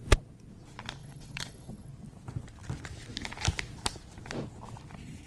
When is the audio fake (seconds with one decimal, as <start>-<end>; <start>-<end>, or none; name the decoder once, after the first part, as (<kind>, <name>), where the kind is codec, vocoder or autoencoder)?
1.0-1.9 (vocoder, WaveNeXt)